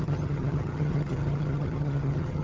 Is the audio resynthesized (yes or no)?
yes